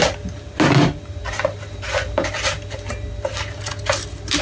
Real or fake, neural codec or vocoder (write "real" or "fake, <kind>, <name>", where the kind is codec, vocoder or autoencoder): real